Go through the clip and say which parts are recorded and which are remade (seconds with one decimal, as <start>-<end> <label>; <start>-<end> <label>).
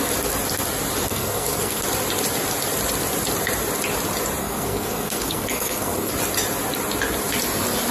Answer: 0.0-1.1 recorded; 1.1-1.8 remade; 1.8-4.4 recorded; 4.4-6.1 remade; 6.1-7.9 recorded